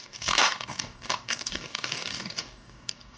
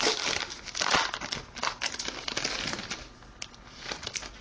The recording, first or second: second